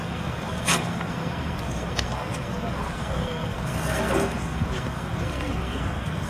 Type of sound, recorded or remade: remade